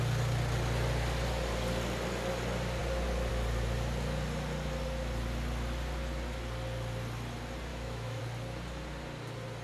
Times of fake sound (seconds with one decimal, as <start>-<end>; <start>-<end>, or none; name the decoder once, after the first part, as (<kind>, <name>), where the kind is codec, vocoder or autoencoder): 7.7-8.2 (autoencoder, DAC-VAE)